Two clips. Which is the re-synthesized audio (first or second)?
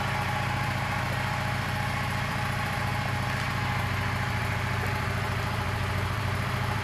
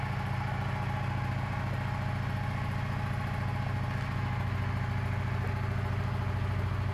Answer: first